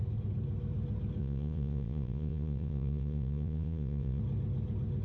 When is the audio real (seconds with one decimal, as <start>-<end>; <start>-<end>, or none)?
0.0-1.2; 4.2-5.0